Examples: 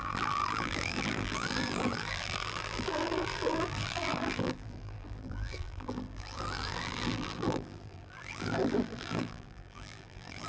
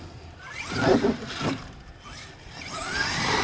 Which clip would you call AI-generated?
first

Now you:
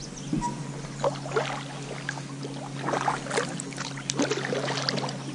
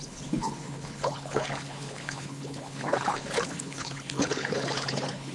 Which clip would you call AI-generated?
second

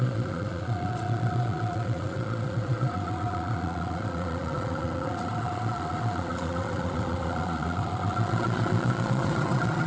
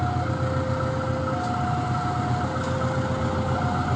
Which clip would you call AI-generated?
first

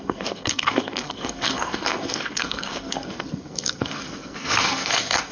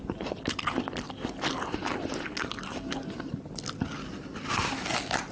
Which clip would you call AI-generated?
first